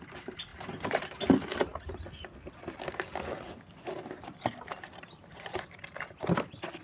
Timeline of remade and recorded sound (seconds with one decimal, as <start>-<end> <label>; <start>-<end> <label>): 0.0-6.8 recorded